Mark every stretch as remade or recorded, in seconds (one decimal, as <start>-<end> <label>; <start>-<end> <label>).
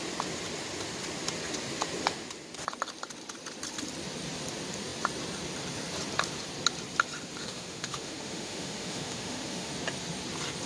0.0-7.4 recorded; 7.4-9.7 remade; 9.7-10.7 recorded